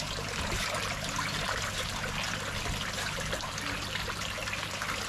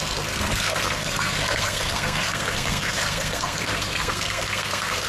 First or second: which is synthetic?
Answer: second